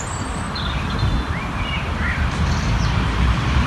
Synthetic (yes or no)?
yes